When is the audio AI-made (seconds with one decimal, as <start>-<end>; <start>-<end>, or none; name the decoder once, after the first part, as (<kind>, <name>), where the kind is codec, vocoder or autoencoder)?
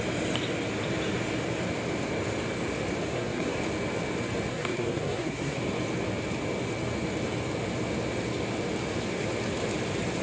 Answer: 3.1-3.6 (codec, SNAC); 4.5-5.6